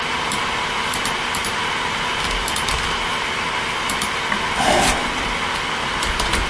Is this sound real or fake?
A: fake